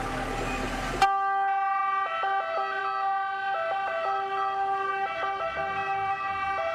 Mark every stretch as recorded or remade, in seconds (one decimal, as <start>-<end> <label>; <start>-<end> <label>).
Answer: 0.0-6.7 recorded

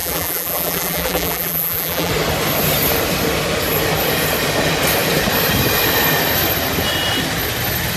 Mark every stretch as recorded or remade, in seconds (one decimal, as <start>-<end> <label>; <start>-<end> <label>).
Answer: 0.0-2.1 remade; 2.1-8.0 recorded

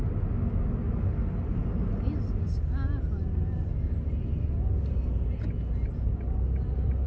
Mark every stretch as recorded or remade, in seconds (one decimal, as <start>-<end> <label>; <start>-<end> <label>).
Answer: 0.0-7.1 recorded

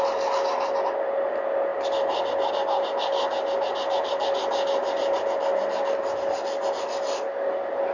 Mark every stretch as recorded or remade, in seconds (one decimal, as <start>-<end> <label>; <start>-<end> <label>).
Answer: 0.0-7.9 recorded